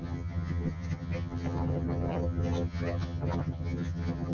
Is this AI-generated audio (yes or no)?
yes